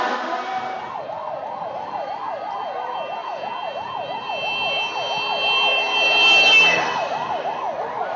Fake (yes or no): no